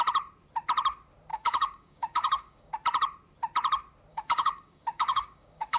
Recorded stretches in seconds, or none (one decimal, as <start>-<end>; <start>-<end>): 0.0-1.3; 2.7-4.1